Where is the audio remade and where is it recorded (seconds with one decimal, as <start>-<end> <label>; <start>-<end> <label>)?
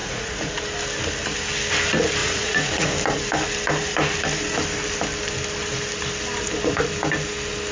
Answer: 0.0-0.5 remade; 0.5-2.2 recorded; 2.2-2.9 remade; 2.9-7.7 recorded